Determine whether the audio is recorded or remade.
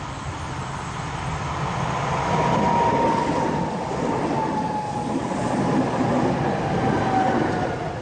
recorded